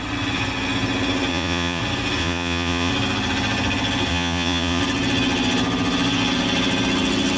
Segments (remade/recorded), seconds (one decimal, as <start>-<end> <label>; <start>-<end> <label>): 0.0-1.3 recorded; 1.3-1.8 remade; 1.8-2.2 recorded; 2.2-2.9 remade; 2.9-4.1 recorded; 4.1-4.8 remade; 4.8-7.4 recorded